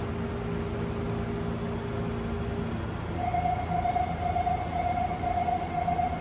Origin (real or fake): real